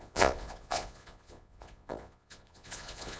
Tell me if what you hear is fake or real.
fake